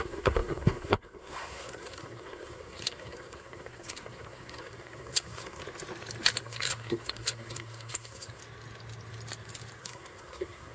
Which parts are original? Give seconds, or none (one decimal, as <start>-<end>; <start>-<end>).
5.6-6.4; 8.4-9.8